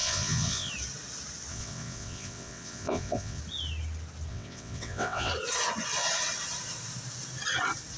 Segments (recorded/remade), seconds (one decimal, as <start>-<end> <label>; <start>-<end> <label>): 0.0-0.7 remade; 0.7-1.5 recorded; 1.5-3.4 remade; 3.4-4.3 recorded; 4.3-5.3 remade; 5.3-8.0 recorded